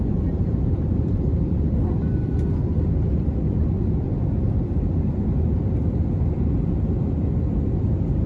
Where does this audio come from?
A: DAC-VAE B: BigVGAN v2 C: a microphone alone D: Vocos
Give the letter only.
B